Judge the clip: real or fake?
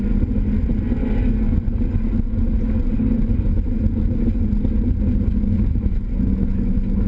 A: real